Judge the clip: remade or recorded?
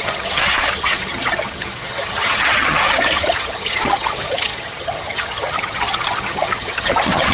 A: remade